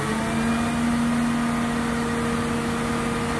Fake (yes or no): no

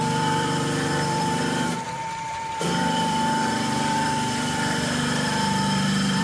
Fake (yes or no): yes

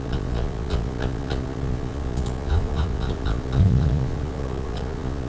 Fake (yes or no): yes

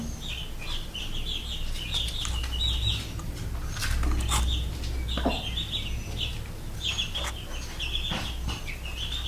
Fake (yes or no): no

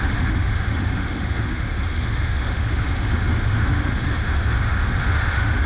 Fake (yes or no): yes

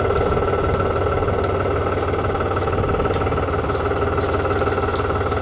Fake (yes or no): no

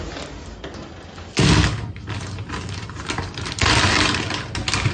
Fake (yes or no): no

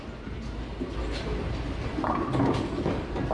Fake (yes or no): no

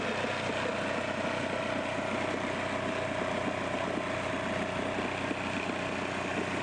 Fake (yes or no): no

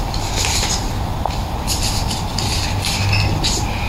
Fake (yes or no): yes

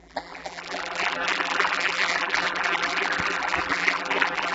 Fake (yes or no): yes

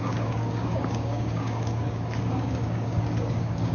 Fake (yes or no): yes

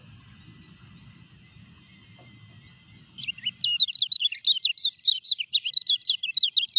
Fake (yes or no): no